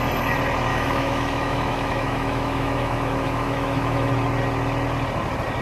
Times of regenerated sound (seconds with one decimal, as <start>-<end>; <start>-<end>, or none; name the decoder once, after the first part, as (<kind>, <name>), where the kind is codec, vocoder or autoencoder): 0.7-4.1 (autoencoder, DAC-VAE)